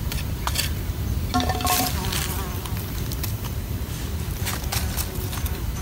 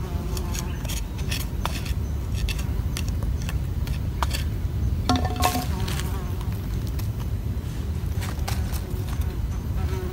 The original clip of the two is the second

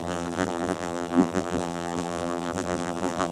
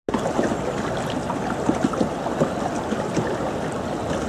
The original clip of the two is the second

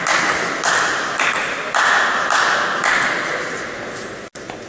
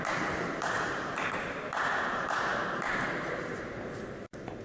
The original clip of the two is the first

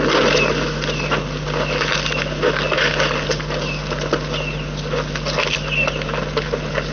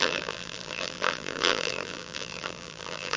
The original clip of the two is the first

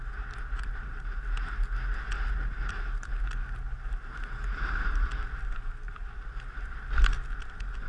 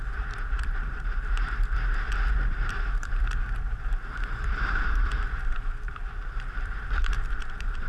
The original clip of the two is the first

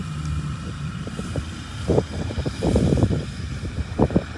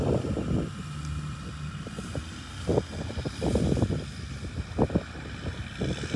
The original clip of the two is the second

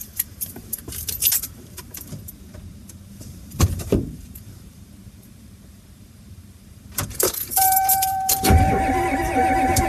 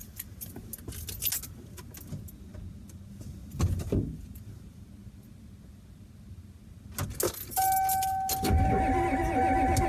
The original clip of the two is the second